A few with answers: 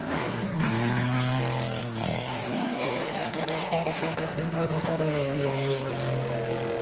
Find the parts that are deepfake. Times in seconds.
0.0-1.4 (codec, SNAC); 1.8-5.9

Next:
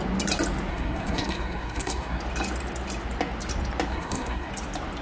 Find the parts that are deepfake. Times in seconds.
0.7-2.2 (codec, SNAC); 3.9-4.5

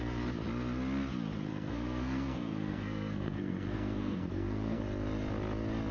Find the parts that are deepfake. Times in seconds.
1.5-4.8 (codec, SNAC)

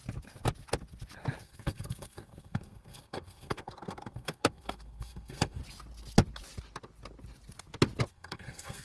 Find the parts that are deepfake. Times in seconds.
1.4-5.6 (codec, SNAC); 8.1-8.8